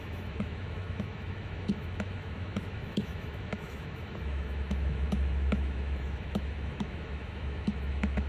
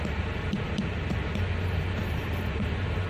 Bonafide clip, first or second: second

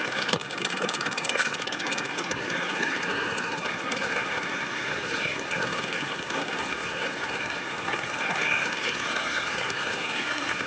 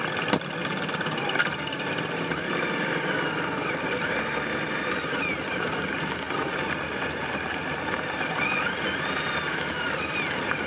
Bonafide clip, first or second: second